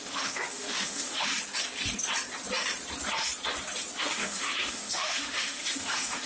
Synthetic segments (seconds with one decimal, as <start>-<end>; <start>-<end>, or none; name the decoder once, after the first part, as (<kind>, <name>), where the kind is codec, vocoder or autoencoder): 0.0-1.3 (autoencoder, DAC-VAE); 4.0-6.3

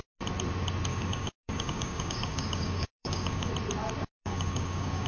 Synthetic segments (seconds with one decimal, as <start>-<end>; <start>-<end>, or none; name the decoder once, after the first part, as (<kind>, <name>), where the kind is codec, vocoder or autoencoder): 0.9-3.5 (codec, DAC); 4.1-5.1

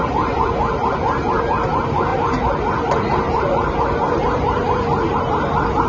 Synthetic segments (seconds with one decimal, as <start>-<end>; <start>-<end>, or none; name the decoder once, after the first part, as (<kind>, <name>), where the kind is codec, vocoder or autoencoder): none

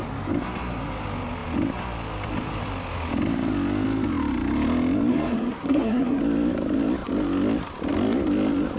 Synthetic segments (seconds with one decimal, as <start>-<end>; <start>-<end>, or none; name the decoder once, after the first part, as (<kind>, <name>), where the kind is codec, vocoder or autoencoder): 5.1-6.2 (codec, SNAC)

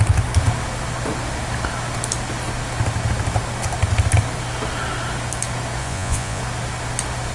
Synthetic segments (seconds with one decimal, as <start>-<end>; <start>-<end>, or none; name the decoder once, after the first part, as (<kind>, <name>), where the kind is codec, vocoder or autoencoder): 5.8-6.4 (vocoder, Vocos)

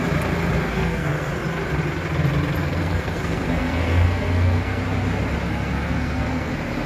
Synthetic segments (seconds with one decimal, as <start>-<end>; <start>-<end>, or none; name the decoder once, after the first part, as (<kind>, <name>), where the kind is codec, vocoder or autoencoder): 0.6-1.3 (codec, SNAC); 2.6-4.8; 5.5-6.5

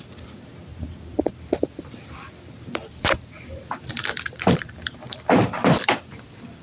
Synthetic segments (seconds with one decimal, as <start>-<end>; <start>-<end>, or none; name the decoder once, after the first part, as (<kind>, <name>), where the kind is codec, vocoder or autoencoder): 0.0-0.5 (vocoder, BigVGAN v2); 1.2-6.6